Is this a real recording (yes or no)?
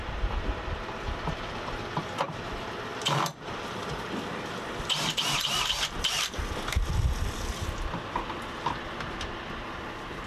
no